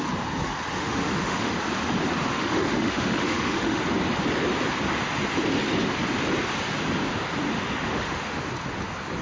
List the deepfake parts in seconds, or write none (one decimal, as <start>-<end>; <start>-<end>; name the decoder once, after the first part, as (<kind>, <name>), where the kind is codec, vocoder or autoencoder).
0.8-1.5 (autoencoder, DAC-VAE); 2.3-3.8; 7.5-8.4